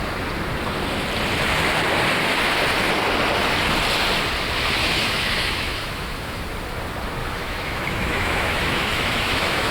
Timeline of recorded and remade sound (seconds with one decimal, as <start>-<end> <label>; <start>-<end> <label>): 0.0-4.8 recorded; 4.8-6.4 remade; 6.4-7.2 recorded; 7.2-9.7 remade

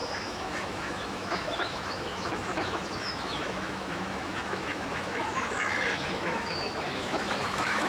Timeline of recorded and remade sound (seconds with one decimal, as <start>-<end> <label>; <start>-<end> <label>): 0.0-7.9 remade

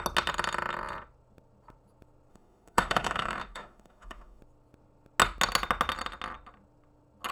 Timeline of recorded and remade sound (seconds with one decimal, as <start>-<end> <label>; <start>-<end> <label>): 0.0-2.3 recorded; 2.3-4.4 remade; 4.4-7.3 recorded

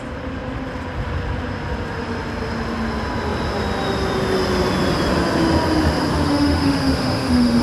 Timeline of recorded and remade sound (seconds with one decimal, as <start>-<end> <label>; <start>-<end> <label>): 0.0-6.1 recorded; 6.1-7.6 remade